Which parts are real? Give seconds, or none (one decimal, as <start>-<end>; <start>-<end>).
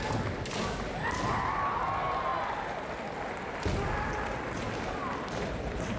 0.0-6.0